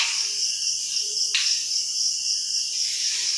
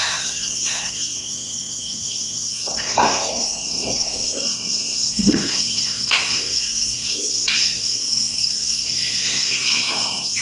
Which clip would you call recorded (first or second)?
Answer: first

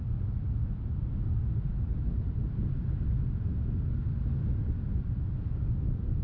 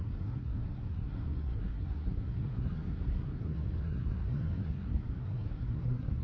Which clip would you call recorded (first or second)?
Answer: first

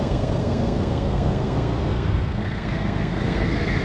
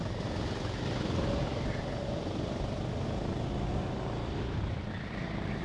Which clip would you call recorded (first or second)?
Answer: second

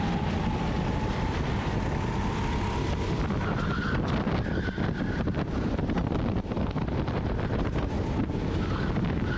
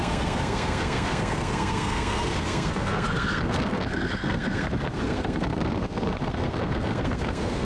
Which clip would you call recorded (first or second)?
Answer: first